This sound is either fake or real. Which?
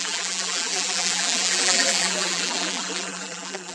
fake